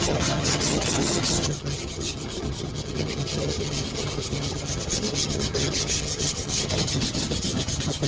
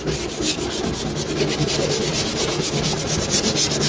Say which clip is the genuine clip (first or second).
second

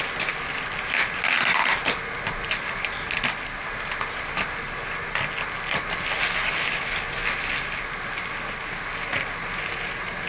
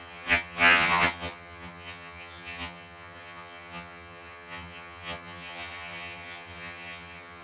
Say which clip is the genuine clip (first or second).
first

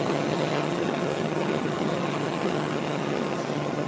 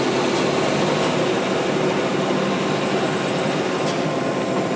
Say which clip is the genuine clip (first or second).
second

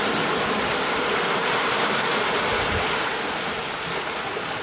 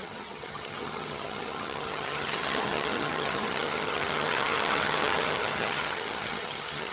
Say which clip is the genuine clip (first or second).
first